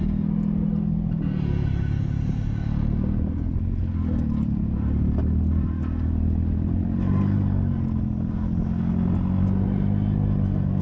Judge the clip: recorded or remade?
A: recorded